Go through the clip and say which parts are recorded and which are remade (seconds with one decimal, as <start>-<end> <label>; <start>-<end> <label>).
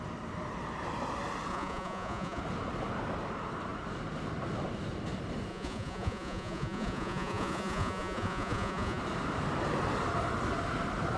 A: 0.0-1.5 recorded; 1.5-2.4 remade; 2.4-5.5 recorded; 5.5-9.0 remade; 9.0-11.2 recorded